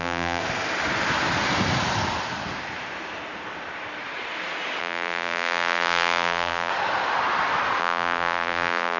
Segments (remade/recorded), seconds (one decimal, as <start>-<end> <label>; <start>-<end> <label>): 0.0-0.4 remade; 0.4-4.8 recorded; 4.8-6.7 remade; 6.7-7.8 recorded; 7.8-9.0 remade